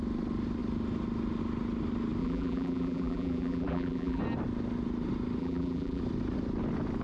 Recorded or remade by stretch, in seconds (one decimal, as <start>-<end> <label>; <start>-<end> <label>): 0.0-2.2 recorded; 2.2-4.2 remade; 4.2-5.4 recorded; 5.4-6.0 remade; 6.0-7.0 recorded